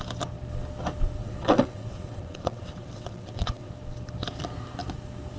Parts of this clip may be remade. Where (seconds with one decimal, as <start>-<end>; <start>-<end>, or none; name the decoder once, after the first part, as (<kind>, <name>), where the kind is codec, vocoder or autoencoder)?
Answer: 1.2-3.7 (vocoder, WaveNeXt)